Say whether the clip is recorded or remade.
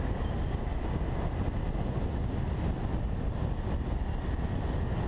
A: recorded